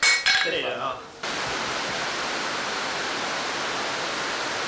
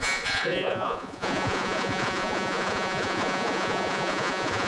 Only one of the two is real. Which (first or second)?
first